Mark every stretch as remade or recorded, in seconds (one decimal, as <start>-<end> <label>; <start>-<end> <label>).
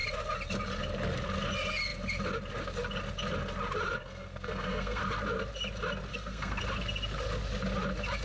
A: 0.0-4.0 recorded; 4.0-5.0 remade; 5.0-6.1 recorded; 6.1-6.6 remade; 6.6-8.2 recorded